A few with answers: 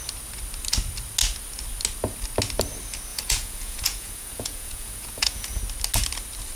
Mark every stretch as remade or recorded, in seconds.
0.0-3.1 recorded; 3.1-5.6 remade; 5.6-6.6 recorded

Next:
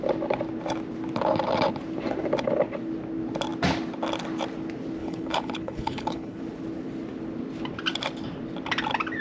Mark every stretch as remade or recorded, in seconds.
0.0-5.0 recorded; 5.0-6.4 remade; 6.4-9.2 recorded